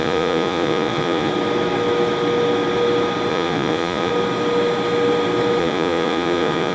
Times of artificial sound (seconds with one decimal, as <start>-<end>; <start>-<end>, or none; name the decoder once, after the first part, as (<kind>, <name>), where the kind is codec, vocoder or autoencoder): 0.0-1.3 (vocoder, Vocos); 3.3-4.1; 5.6-6.7